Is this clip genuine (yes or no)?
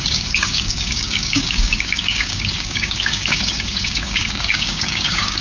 no